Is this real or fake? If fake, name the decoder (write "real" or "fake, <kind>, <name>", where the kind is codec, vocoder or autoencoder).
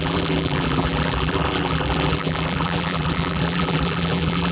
fake, vocoder, BigVGAN v2